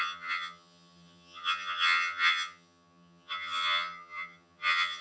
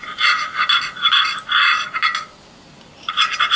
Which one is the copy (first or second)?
first